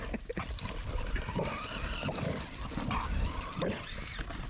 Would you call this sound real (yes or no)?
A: yes